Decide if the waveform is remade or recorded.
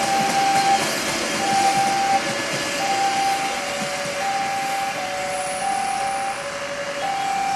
recorded